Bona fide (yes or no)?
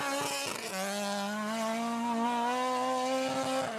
yes